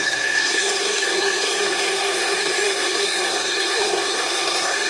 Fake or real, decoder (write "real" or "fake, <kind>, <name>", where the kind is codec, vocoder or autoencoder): fake, codec, SNAC